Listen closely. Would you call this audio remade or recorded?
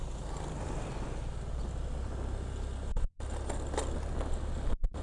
recorded